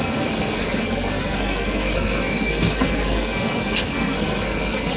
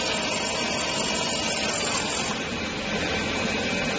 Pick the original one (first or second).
second